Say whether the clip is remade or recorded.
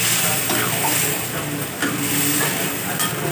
recorded